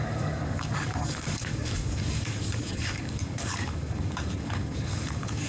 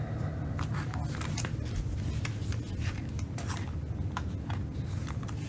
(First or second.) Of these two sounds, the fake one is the first